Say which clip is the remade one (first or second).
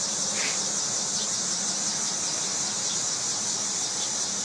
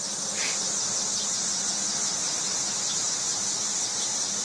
first